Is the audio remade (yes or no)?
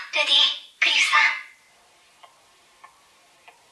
no